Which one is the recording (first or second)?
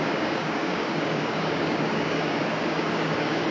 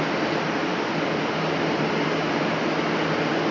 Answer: second